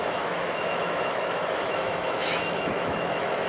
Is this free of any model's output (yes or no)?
no